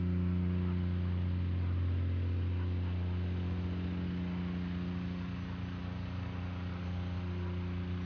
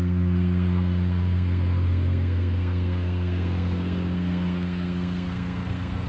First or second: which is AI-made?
second